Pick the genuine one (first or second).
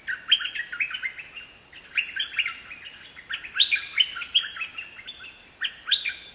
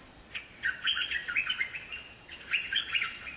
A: first